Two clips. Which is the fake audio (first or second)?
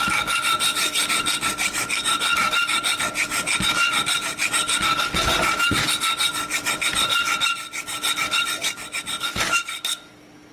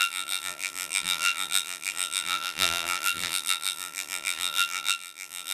second